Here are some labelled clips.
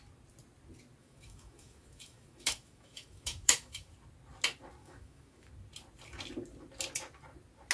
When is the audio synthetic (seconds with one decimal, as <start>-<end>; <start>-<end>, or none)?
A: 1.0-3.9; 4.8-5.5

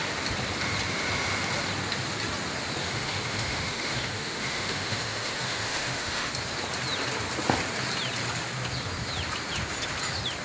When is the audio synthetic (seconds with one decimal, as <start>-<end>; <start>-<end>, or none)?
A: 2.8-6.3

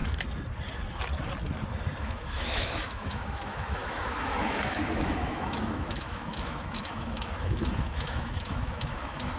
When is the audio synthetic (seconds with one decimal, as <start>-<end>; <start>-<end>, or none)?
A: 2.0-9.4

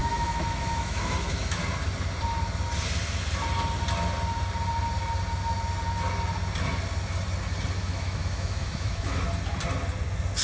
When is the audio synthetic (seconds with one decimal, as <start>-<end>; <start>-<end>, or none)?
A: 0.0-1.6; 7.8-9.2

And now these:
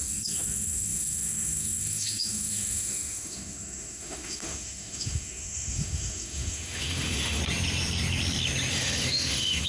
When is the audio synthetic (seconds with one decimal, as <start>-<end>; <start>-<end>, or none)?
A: 0.0-7.4; 8.7-9.7

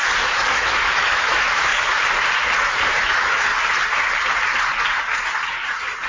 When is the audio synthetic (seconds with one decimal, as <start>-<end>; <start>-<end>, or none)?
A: 0.5-1.7; 3.0-3.5

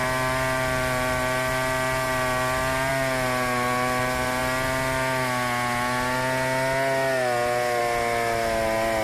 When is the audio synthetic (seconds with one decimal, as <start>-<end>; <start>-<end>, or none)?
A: none